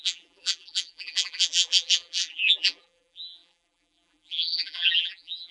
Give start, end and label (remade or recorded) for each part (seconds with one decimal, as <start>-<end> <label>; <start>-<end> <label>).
0.0-5.5 remade